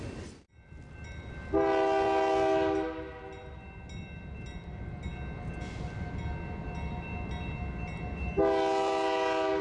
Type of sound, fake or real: real